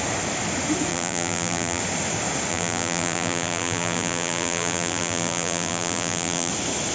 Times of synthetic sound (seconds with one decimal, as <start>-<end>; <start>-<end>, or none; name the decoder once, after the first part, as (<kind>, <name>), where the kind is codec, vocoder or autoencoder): 0.9-1.8 (vocoder, BigVGAN v2); 2.5-6.5